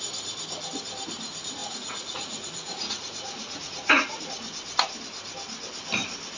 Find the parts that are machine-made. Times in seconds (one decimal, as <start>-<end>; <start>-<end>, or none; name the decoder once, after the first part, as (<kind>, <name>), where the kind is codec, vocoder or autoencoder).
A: 1.6-4.2 (vocoder, Vocos)